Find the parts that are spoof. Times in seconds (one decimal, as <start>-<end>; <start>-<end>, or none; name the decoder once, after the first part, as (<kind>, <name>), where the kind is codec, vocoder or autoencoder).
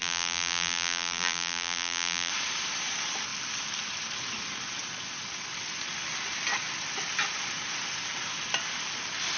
0.0-2.3 (vocoder, BigVGAN v2)